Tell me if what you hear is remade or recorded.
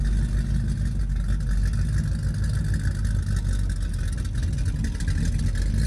recorded